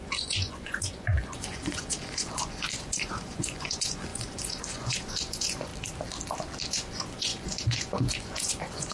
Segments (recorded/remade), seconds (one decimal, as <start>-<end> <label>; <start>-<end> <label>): 0.0-5.7 remade; 5.7-6.7 recorded; 6.7-8.9 remade

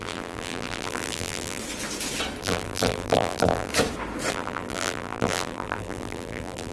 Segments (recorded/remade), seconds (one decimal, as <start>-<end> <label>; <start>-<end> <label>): 0.0-1.6 remade; 1.6-2.4 recorded; 2.4-3.7 remade; 3.7-4.3 recorded; 4.3-6.7 remade